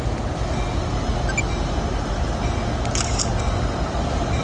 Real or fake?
real